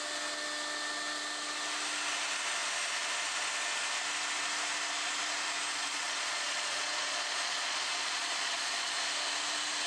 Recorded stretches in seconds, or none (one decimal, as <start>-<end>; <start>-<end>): 0.0-5.7; 9.0-9.9